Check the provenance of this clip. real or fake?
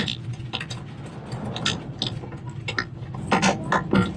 real